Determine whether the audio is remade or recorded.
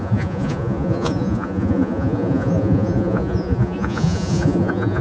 remade